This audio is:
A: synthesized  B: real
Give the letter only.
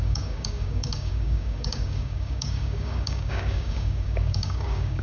A